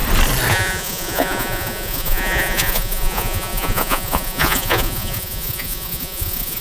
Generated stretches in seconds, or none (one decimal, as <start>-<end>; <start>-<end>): 0.5-6.6